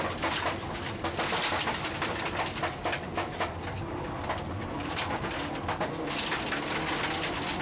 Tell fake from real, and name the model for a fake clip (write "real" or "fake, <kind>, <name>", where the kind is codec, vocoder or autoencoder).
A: real